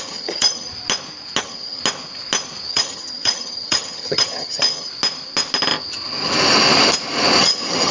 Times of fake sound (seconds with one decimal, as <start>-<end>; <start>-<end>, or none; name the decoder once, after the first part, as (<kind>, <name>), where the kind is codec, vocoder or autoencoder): 0.0-0.7 (vocoder, HiFi-GAN); 1.4-1.8; 2.7-4.9; 7.4-7.9